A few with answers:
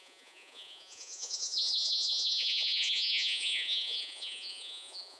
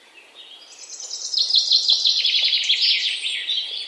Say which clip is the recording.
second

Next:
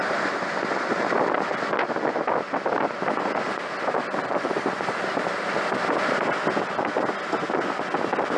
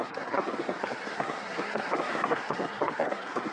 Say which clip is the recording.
first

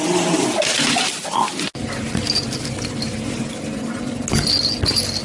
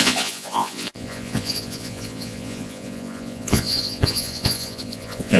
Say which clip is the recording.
first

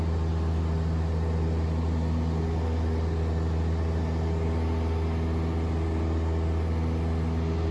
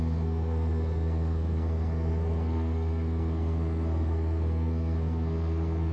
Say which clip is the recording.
first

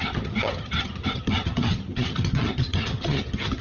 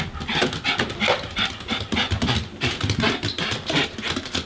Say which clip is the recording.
second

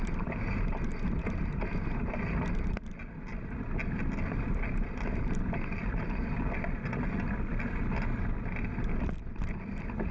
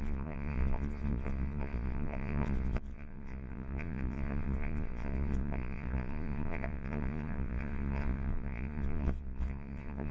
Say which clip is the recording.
first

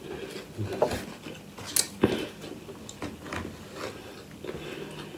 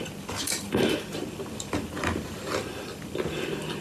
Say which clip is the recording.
first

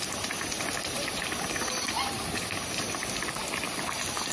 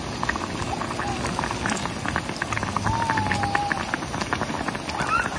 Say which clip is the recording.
second